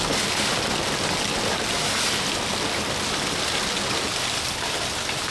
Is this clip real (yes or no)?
yes